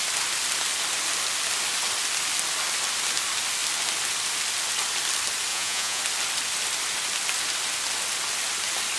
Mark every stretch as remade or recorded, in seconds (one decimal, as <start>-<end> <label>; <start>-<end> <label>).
0.0-5.5 recorded; 5.5-6.0 remade; 6.0-9.0 recorded